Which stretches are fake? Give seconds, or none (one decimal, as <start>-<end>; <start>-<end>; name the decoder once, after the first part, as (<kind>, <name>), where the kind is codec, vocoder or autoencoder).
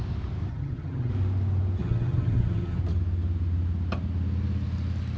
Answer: 0.5-1.1 (vocoder, HiFi-GAN); 1.8-2.8